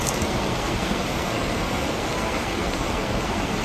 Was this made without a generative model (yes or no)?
no